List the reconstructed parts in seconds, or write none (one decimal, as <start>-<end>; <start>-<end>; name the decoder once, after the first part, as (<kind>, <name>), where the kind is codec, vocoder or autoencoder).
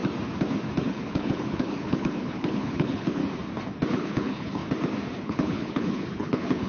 0.8-3.2 (codec, HILCodec); 3.9-4.6; 5.2-6.7